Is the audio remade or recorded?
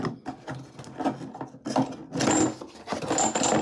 recorded